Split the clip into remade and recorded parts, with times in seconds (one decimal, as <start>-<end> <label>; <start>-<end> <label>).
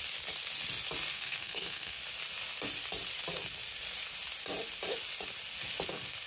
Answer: 0.0-1.1 recorded; 1.1-2.0 remade; 2.0-6.3 recorded